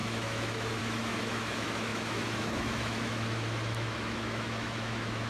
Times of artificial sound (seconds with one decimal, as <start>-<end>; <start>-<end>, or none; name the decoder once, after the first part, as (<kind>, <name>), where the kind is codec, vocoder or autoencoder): 0.0-5.3 (autoencoder, DAC-VAE)